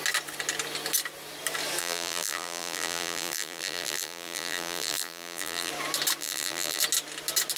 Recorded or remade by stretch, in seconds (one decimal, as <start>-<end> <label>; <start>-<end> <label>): 0.0-1.8 recorded; 1.8-5.7 remade; 5.7-6.2 recorded; 6.2-6.8 remade; 6.8-7.6 recorded